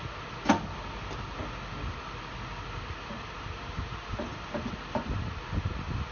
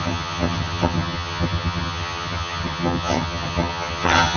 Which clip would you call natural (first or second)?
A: first